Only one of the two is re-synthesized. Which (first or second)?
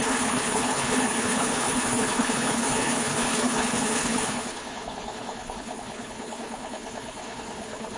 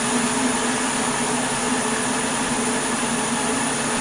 first